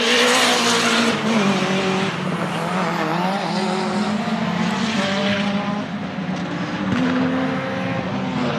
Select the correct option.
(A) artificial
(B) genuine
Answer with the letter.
B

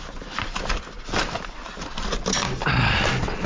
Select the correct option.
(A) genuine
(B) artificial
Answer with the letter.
A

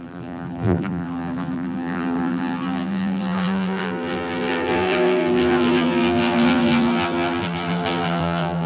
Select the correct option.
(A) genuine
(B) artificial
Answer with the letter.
B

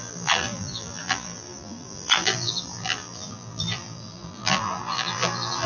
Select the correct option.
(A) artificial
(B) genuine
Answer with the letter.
A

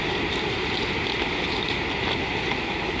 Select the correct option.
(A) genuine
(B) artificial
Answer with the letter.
A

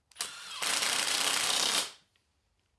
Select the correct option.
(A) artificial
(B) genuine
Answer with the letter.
A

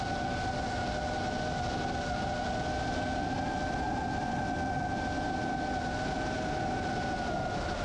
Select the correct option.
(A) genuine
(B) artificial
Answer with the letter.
A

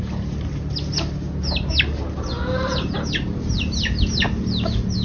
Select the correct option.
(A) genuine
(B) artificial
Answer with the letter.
A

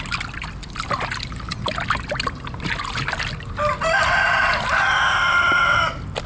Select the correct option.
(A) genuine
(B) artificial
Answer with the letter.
A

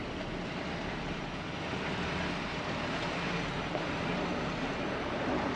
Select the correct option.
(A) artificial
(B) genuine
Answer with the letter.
A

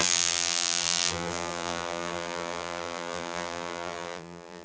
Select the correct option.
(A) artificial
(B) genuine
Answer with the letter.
A